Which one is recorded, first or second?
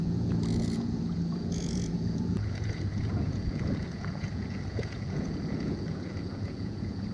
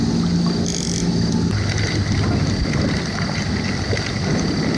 second